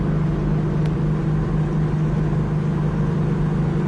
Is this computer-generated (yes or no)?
no